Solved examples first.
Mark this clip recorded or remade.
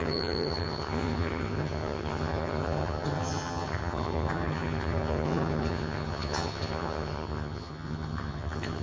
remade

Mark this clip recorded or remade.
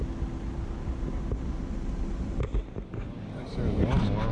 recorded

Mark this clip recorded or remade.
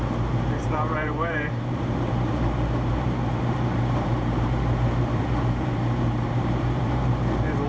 remade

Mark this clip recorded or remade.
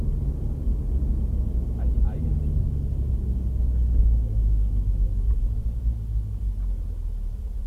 recorded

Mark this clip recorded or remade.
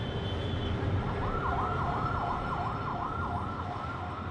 recorded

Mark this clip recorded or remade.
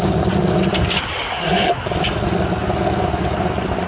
recorded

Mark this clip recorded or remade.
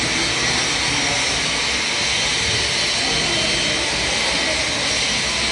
recorded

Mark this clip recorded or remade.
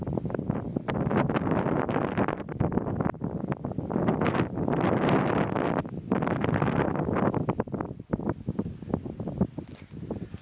recorded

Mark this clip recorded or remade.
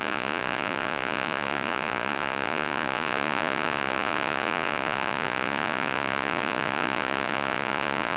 remade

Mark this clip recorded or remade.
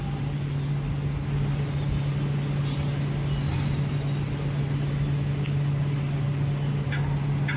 recorded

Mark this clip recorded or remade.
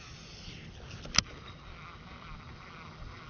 recorded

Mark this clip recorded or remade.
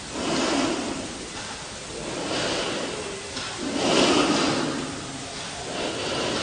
recorded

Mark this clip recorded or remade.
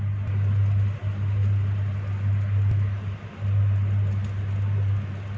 recorded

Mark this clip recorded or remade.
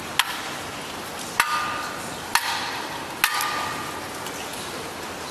recorded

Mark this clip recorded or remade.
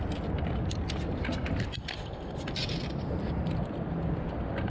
recorded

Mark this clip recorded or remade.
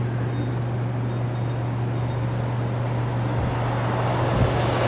recorded